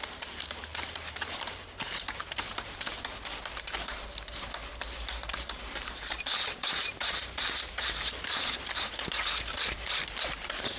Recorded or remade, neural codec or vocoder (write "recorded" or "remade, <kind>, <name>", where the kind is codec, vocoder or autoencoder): remade, vocoder, BigVGAN v2